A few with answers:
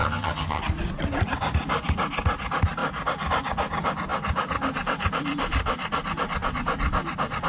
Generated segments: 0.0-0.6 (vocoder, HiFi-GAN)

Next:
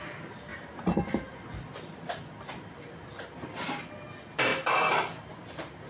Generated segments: none

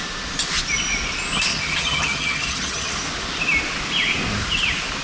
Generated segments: 1.5-2.9 (vocoder, HiFi-GAN)

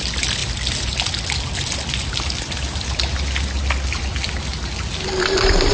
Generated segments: none

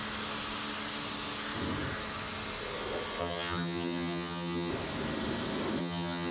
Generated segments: 3.2-4.7 (vocoder, HiFi-GAN); 5.8-6.3

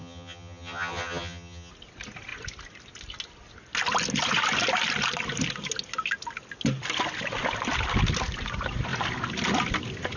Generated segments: 0.0-1.7 (vocoder, HiFi-GAN)

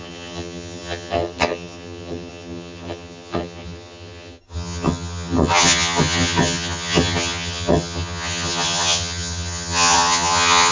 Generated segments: 0.0-10.7 (vocoder, HiFi-GAN)